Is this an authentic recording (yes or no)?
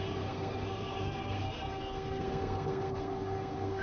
no